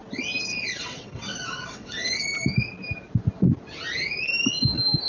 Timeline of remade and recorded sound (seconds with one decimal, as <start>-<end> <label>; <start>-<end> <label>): 0.0-0.5 recorded; 0.5-2.2 remade; 2.2-5.1 recorded